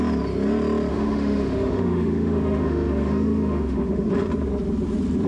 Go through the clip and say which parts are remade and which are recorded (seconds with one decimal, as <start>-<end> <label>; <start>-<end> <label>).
0.0-0.9 recorded; 0.9-4.1 remade; 4.1-5.3 recorded